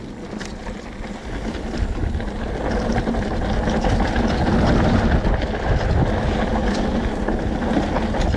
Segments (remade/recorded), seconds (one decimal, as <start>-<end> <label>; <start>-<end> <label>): 0.0-8.4 recorded